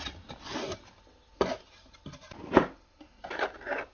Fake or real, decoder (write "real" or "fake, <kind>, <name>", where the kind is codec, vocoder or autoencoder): real